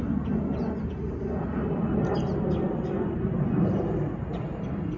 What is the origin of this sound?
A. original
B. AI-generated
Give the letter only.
A